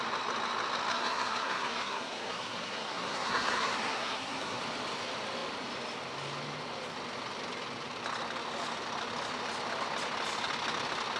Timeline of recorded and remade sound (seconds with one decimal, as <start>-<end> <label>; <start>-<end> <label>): 0.0-0.9 recorded; 0.9-4.6 remade; 4.6-11.2 recorded